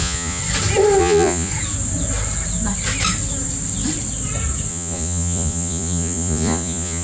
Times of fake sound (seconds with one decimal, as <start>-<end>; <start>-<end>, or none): 0.0-0.4; 1.0-1.5; 4.7-7.0